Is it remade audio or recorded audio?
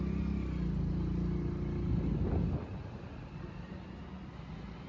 recorded